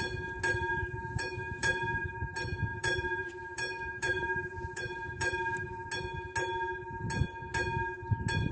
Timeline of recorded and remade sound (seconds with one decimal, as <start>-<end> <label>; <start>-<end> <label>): 0.0-0.7 recorded; 0.7-2.2 remade; 2.2-2.7 recorded; 2.7-5.9 remade; 5.9-8.5 recorded